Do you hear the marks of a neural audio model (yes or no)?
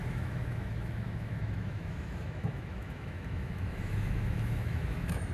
yes